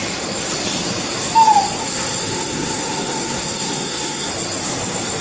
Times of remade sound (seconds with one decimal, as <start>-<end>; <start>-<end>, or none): 1.8-4.3